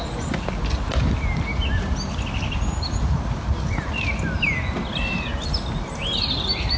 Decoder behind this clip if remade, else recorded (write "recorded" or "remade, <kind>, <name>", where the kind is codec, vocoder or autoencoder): recorded